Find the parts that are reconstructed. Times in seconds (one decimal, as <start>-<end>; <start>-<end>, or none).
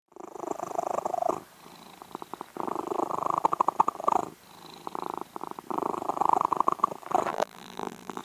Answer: 7.3-8.2